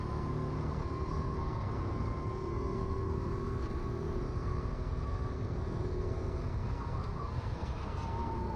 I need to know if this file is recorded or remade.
remade